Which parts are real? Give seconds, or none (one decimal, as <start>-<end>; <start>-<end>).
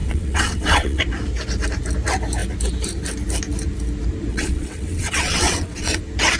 1.0-4.3; 6.0-6.4